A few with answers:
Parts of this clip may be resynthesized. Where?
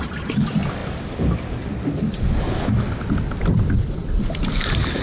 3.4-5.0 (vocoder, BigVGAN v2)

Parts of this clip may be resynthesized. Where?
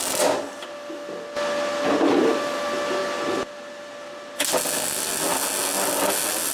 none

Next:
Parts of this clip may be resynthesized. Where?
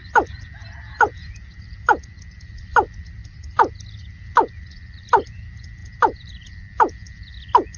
3.2-4.6 (vocoder, BigVGAN v2); 5.8-6.6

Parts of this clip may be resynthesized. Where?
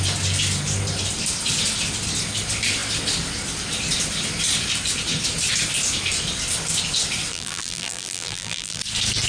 7.3-8.8 (vocoder, BigVGAN v2)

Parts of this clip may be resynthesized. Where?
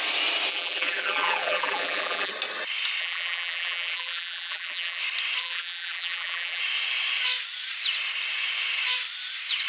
0.5-2.3 (vocoder, BigVGAN v2); 3.0-5.0; 5.4-6.6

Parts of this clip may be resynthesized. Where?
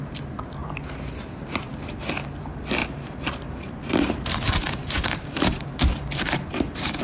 2.8-7.0 (vocoder, BigVGAN v2)